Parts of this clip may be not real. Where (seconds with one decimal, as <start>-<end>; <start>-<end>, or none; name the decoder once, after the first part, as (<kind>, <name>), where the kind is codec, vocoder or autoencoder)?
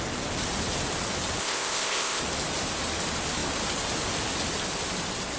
1.4-2.2 (codec, ZipCodec)